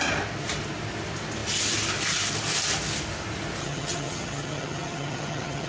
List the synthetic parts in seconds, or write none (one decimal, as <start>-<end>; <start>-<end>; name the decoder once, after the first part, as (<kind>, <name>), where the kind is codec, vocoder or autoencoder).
3.6-5.7 (vocoder, HiFi-GAN)